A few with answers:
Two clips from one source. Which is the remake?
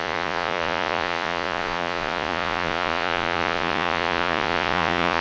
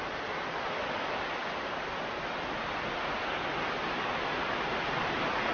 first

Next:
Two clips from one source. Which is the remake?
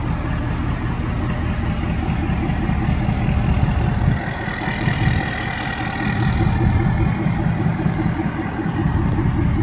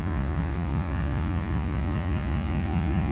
second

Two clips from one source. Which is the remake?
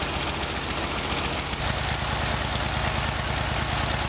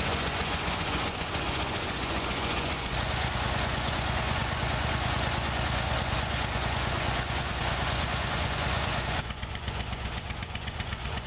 second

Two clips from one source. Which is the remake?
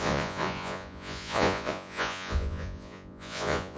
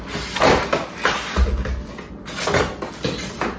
first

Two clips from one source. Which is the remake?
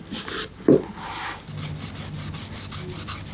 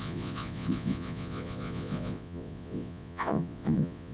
second